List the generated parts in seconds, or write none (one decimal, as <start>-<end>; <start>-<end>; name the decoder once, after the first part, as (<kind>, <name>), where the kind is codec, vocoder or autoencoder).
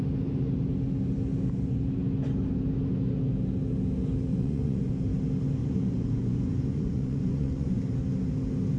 4.3-4.9 (vocoder, Vocos); 5.6-7.8